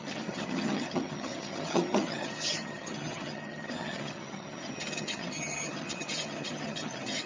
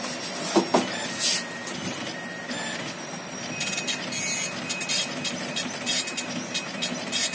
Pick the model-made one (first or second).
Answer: first